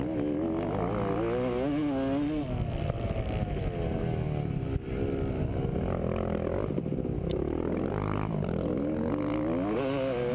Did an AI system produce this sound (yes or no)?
no